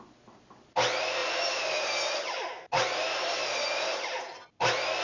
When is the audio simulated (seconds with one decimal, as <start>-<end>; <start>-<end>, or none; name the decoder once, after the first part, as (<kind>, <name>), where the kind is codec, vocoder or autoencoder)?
1.2-4.2 (vocoder, BigVGAN v2)

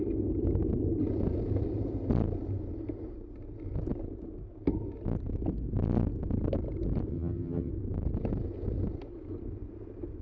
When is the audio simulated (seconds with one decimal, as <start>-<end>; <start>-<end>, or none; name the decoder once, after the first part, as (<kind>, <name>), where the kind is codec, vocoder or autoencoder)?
7.1-7.7 (vocoder, HiFi-GAN)